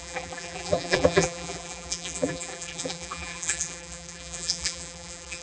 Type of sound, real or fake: fake